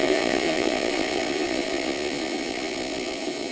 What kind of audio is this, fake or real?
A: fake